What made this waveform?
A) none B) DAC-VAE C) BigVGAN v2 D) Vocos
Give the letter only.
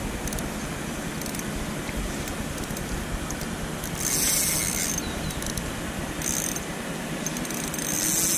A